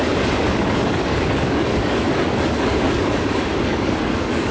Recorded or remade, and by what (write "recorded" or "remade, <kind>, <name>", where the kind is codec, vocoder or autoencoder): remade, codec, DAC